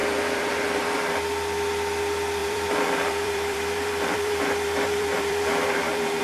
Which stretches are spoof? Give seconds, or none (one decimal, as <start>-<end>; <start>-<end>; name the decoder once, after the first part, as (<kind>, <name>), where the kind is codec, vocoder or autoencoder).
0.0-1.1 (vocoder, BigVGAN v2); 2.4-6.2